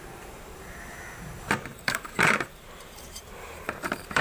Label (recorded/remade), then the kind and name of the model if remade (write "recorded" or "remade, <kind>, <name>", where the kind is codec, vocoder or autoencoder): remade, vocoder, BigVGAN v2